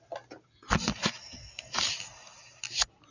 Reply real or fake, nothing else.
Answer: real